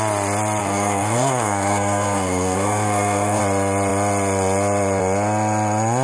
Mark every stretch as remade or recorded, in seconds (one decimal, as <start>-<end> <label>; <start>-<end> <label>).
0.0-0.6 recorded; 0.6-3.4 remade; 3.4-6.0 recorded